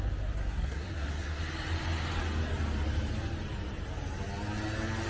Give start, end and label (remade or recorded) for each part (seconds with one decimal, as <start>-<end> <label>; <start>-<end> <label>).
0.0-0.4 recorded; 0.4-1.4 remade; 1.4-5.1 recorded